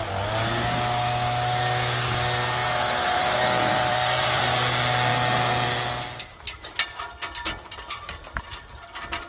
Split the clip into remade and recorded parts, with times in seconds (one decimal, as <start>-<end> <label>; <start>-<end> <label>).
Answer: 0.0-2.6 recorded; 2.6-4.4 remade; 4.4-9.3 recorded